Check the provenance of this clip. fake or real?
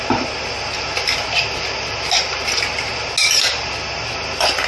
real